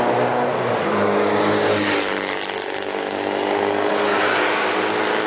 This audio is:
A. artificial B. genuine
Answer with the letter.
B